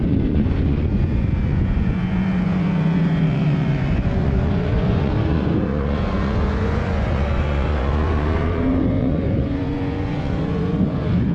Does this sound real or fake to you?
fake